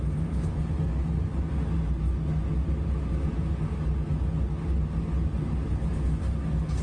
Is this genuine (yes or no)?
yes